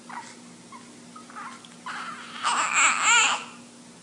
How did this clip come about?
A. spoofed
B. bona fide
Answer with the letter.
B